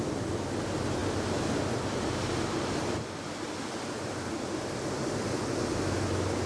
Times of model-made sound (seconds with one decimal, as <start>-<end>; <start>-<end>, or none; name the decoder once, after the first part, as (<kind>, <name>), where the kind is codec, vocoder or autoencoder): none